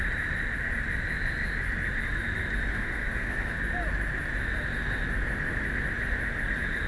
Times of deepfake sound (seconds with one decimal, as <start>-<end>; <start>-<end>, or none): 2.7-3.6